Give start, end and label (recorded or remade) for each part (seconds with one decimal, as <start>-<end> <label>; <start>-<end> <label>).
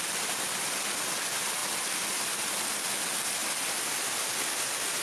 0.0-5.0 recorded